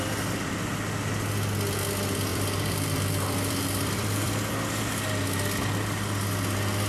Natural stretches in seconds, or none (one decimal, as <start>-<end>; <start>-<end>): 0.0-2.3; 4.5-6.9